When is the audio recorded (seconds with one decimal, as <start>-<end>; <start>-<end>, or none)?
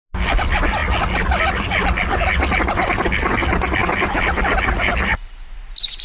0.0-6.0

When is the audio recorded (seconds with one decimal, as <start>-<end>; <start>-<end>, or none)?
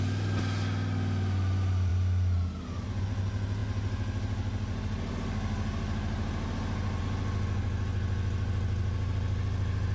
0.0-9.9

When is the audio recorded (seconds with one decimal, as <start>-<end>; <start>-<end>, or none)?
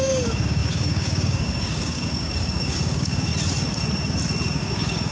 3.3-4.6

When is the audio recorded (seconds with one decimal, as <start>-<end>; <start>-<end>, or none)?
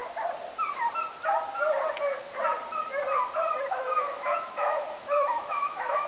0.0-3.7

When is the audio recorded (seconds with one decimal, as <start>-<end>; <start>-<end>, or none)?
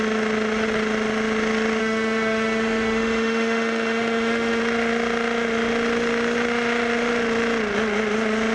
0.0-1.8; 4.6-8.5